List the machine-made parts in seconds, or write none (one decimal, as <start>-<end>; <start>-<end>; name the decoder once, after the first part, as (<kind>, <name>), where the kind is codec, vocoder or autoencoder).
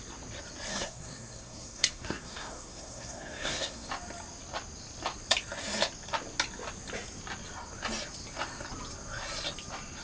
0.7-3.9 (codec, SNAC)